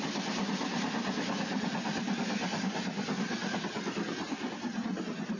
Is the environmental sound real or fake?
real